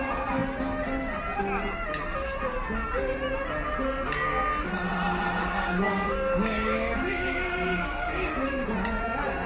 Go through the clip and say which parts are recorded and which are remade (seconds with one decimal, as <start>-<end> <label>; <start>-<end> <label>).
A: 0.0-5.4 recorded; 5.4-8.3 remade; 8.3-9.5 recorded

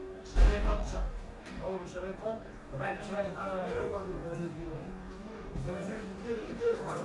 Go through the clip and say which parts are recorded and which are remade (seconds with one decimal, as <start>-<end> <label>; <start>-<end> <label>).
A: 0.0-7.0 remade

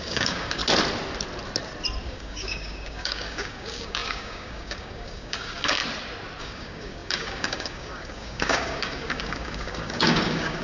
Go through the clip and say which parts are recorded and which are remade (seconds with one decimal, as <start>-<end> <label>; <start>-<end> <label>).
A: 0.0-0.6 remade; 0.6-2.0 recorded; 2.0-5.8 remade; 5.8-6.4 recorded; 6.4-10.6 remade

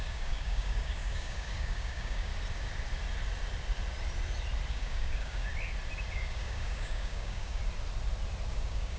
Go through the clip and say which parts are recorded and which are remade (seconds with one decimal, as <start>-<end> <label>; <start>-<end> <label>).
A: 0.0-2.3 remade; 2.3-4.7 recorded; 4.7-5.5 remade; 5.5-6.1 recorded; 6.1-7.6 remade; 7.6-8.5 recorded; 8.5-9.0 remade

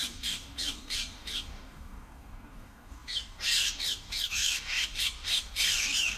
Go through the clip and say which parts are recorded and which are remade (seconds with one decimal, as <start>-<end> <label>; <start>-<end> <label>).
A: 0.0-6.2 remade

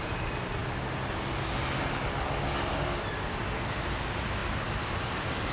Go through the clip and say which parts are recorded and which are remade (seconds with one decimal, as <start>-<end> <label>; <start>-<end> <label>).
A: 0.0-5.5 recorded